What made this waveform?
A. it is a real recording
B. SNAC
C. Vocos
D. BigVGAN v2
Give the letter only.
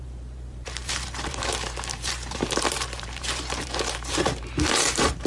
D